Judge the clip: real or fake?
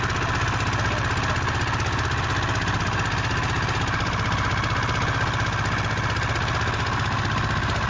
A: real